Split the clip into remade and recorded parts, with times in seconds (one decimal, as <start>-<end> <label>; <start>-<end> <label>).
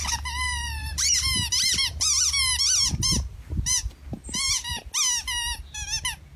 0.0-0.8 recorded; 0.8-3.8 remade; 3.8-4.2 recorded; 4.2-4.7 remade; 4.7-6.4 recorded